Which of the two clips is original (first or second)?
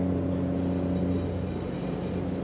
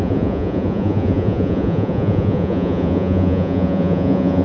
first